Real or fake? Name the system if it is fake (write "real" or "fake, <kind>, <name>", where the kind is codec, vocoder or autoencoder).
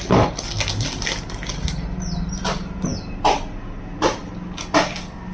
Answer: real